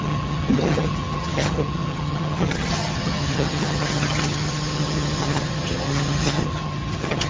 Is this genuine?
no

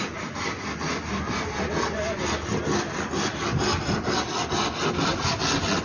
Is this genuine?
yes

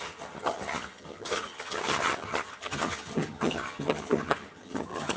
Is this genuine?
no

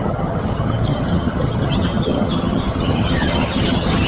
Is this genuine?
no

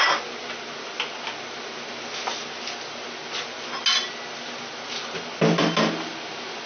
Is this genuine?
yes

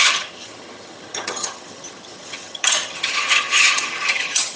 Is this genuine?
no